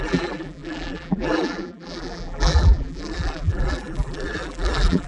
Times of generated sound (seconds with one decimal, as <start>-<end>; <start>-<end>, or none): 0.0-5.1

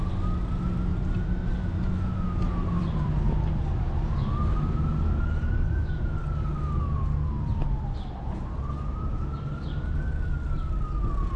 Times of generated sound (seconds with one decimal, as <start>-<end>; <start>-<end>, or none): none

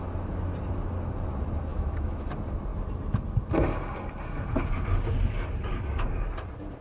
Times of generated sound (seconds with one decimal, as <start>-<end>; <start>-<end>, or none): 1.7-2.3

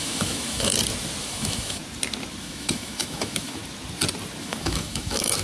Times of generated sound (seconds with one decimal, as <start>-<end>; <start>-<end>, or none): 0.0-0.7; 1.2-1.8; 2.4-3.6; 4.4-5.4

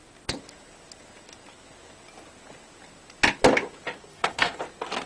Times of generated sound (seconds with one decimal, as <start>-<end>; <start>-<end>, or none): 4.1-4.6

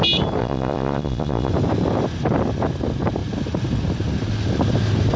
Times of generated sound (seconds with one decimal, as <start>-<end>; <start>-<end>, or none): 0.4-1.5

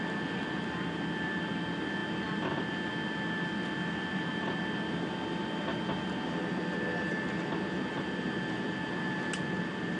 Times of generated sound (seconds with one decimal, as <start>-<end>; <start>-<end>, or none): none